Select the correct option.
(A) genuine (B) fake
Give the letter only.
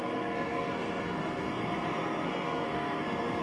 B